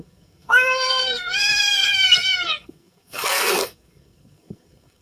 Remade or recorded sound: remade